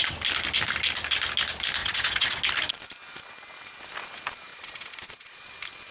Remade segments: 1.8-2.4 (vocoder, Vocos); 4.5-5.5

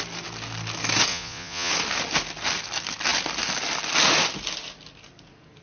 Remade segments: 1.1-1.7 (vocoder, Vocos)